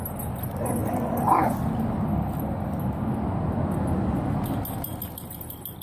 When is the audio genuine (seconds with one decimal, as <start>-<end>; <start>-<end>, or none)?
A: 0.0-5.8